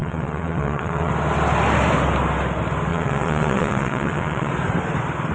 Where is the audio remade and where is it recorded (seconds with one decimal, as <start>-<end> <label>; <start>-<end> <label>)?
0.0-1.1 remade; 1.1-2.9 recorded; 2.9-4.5 remade; 4.5-5.3 recorded